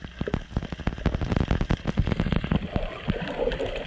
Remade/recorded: recorded